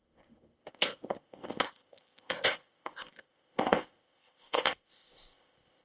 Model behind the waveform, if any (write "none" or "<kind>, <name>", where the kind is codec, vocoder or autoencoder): codec, ZipCodec